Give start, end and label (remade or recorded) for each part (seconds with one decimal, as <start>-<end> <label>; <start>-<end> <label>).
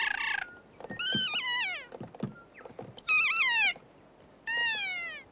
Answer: 0.0-5.3 recorded